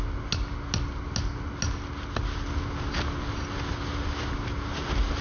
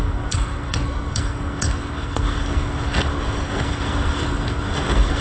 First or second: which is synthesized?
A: second